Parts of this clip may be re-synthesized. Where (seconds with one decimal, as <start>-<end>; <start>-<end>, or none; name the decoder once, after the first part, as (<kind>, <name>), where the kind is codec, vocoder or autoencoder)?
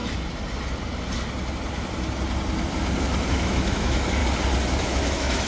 3.3-4.2 (autoencoder, DAC-VAE); 4.8-5.5